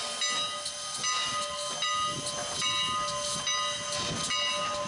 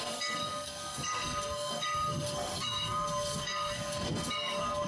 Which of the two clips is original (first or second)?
first